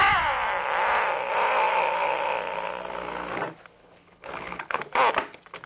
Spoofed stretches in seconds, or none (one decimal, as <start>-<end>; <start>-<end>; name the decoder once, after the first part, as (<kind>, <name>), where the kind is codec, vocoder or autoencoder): 3.8-4.8 (codec, HILCodec)